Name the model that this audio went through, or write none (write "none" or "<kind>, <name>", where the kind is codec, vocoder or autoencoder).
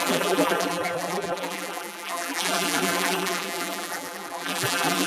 vocoder, BigVGAN v2